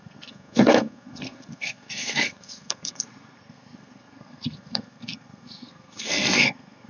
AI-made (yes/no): yes